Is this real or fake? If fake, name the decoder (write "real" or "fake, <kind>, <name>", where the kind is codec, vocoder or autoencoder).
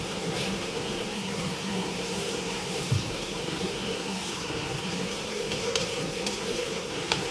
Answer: fake, codec, SNAC